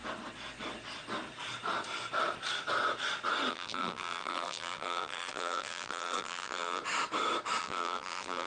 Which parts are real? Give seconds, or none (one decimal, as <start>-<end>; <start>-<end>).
0.0-3.5; 6.8-7.6